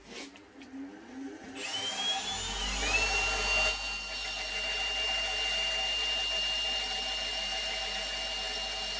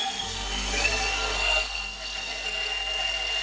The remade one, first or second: second